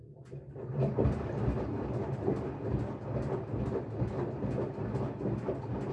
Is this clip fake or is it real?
real